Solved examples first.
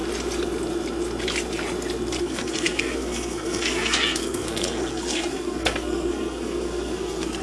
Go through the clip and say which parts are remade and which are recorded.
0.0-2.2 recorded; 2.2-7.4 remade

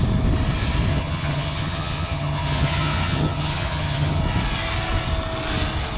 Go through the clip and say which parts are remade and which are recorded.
0.0-0.9 recorded; 0.9-4.2 remade; 4.2-6.0 recorded

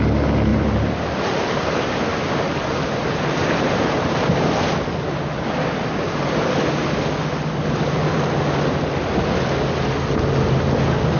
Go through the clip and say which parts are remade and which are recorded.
0.0-0.5 recorded; 0.5-1.2 remade; 1.2-2.1 recorded; 2.1-4.4 remade; 4.4-11.2 recorded

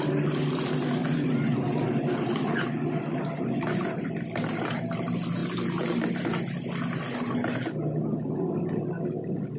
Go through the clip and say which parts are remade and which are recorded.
0.0-1.0 recorded; 1.0-1.9 remade; 1.9-9.6 recorded

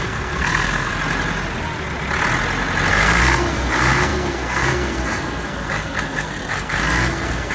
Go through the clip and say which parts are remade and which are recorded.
0.0-0.9 remade; 0.9-2.9 recorded; 2.9-7.5 remade

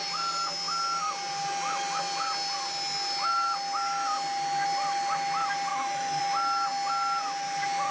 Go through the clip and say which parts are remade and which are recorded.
0.0-5.7 recorded; 5.7-6.2 remade; 6.2-7.9 recorded

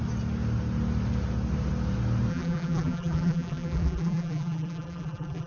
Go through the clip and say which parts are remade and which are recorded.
0.0-2.3 recorded; 2.3-5.5 remade